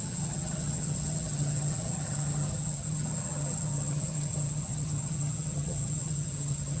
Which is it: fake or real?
fake